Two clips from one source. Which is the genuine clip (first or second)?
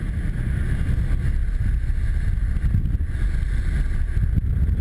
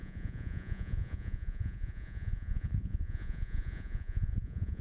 first